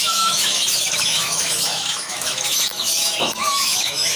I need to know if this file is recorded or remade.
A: remade